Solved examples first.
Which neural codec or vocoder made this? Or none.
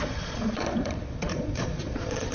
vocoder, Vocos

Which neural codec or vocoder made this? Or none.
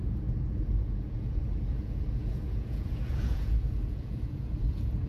vocoder, Vocos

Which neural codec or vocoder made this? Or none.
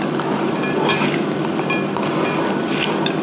none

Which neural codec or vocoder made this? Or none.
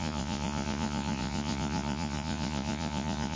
vocoder, Vocos